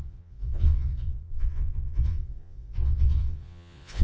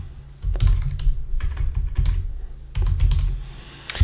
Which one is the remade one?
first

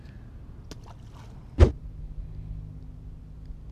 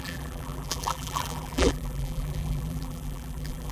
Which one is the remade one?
second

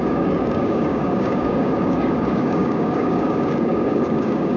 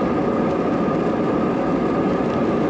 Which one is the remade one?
first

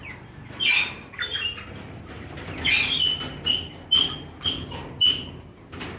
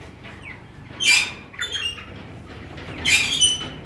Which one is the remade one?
second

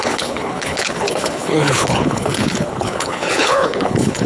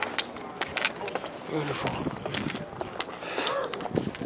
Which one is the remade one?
first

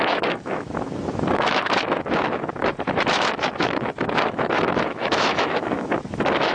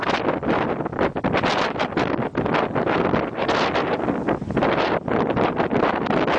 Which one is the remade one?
first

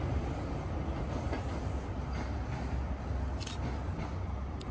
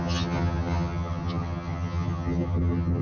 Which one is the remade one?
second